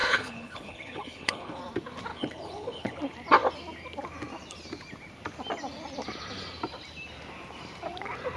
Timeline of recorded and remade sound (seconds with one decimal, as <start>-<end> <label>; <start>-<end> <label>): 0.0-1.6 remade; 1.6-2.1 recorded; 2.1-3.0 remade; 3.0-8.4 recorded